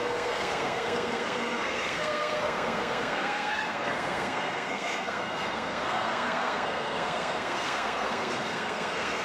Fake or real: fake